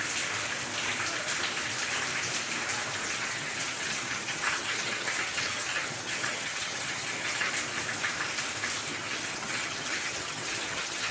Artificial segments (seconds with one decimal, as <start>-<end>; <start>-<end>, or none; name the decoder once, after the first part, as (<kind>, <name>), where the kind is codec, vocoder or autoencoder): 3.0-7.5 (vocoder, HiFi-GAN); 8.9-11.1